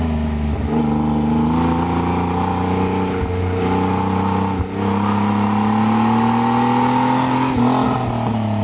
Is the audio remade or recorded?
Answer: recorded